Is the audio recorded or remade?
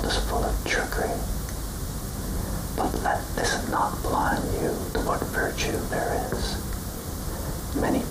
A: remade